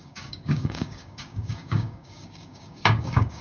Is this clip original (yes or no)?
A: no